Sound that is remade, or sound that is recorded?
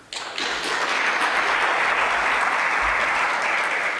recorded